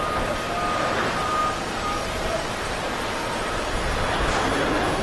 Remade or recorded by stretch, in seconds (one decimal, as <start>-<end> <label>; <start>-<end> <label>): 0.0-5.0 recorded